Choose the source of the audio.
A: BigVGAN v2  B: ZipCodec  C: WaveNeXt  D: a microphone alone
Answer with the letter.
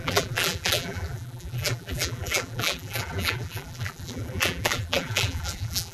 A